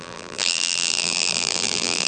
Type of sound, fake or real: fake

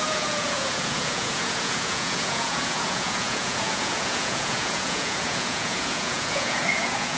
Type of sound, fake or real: fake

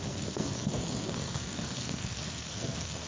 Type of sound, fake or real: fake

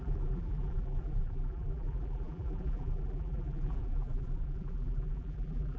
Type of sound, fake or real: fake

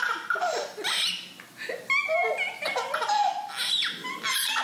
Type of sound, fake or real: real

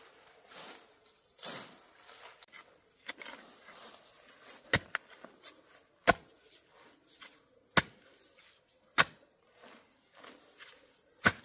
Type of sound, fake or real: real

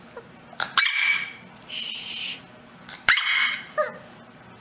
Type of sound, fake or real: real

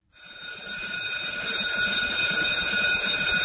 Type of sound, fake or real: real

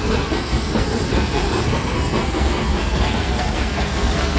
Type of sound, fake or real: fake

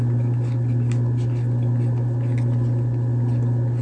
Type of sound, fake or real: real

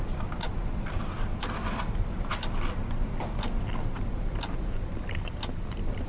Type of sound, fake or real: real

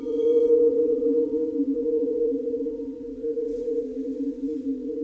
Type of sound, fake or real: fake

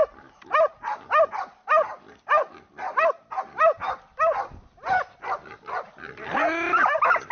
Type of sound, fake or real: real